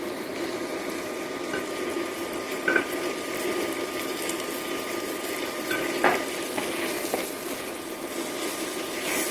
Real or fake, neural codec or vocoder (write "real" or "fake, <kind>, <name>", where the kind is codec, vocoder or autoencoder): fake, vocoder, BigVGAN v2